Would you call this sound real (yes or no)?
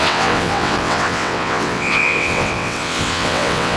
no